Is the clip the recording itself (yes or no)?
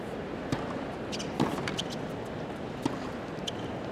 yes